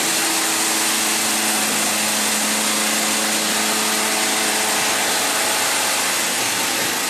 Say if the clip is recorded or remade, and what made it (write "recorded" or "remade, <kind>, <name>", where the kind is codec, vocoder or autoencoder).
recorded